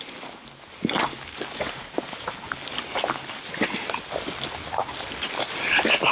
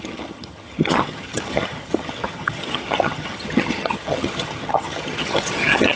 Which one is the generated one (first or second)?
second